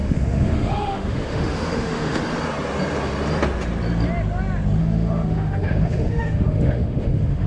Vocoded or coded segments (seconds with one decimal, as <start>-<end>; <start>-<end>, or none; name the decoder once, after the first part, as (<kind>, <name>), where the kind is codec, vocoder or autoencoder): 0.0-2.2 (autoencoder, DAC-VAE); 4.8-7.5